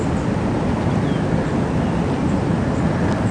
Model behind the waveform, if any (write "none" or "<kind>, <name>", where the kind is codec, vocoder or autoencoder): none